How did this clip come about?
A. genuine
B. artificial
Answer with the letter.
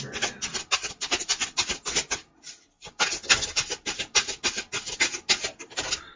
A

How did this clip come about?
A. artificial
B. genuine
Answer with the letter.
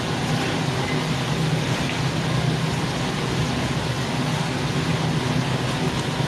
B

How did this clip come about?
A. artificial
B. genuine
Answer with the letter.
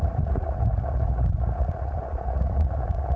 A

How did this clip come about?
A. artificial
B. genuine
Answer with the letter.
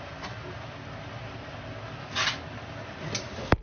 B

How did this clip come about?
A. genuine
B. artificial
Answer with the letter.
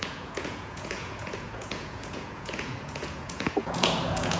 B